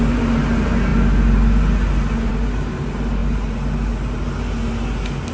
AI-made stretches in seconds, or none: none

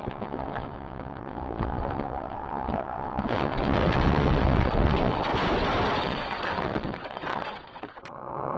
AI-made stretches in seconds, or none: 0.0-5.3 (vocoder, WaveNeXt); 6.0-8.6

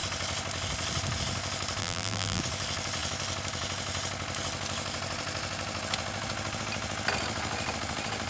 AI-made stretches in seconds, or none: 1.8-2.4 (vocoder, BigVGAN v2)

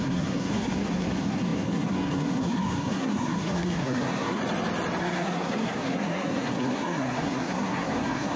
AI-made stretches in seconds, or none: 0.0-4.4 (codec, SNAC); 5.0-8.4

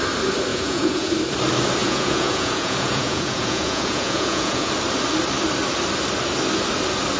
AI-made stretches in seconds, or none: 0.5-1.1 (vocoder, Vocos); 1.8-4.7